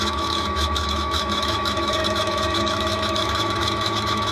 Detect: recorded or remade remade